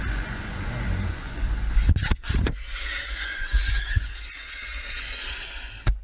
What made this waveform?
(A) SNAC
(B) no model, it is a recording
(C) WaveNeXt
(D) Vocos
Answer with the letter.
D